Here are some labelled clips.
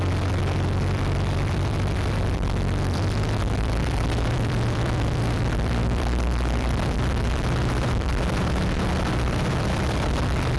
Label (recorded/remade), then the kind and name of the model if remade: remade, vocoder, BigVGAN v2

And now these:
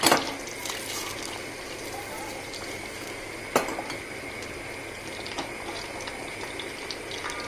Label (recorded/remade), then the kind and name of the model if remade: recorded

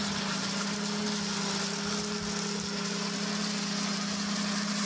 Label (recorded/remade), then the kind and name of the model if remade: recorded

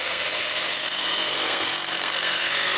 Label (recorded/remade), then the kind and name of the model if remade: remade, codec, SNAC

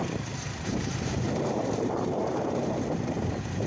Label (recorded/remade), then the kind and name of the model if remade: remade, vocoder, BigVGAN v2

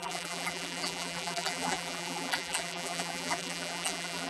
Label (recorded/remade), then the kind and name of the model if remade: remade, vocoder, BigVGAN v2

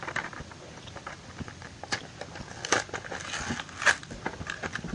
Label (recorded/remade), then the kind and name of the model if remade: recorded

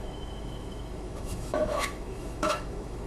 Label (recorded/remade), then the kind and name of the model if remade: remade, autoencoder, DAC-VAE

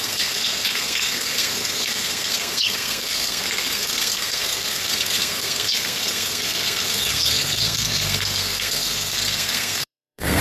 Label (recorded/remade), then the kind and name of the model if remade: remade, codec, SNAC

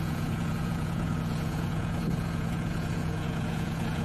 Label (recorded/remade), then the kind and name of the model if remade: remade, vocoder, Vocos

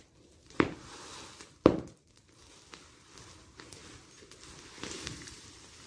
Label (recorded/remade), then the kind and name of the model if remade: recorded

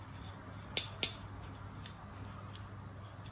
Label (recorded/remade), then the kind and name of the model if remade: recorded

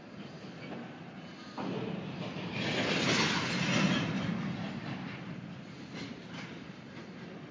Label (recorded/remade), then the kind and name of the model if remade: recorded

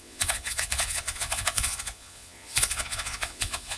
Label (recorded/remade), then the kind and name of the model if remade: remade, vocoder, Vocos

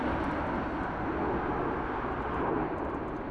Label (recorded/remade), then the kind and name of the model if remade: recorded